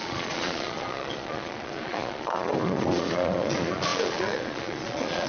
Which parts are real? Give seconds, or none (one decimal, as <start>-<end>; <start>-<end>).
none